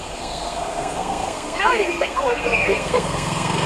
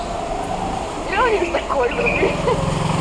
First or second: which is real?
second